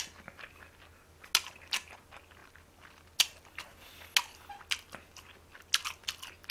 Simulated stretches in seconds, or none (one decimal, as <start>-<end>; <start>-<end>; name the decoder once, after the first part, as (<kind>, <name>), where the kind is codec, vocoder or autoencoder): none